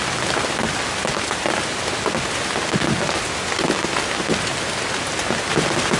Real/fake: real